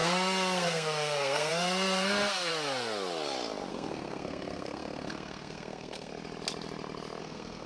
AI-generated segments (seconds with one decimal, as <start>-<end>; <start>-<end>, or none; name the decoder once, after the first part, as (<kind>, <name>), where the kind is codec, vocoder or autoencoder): 0.0-2.5 (codec, SNAC); 3.7-6.1; 7.2-7.7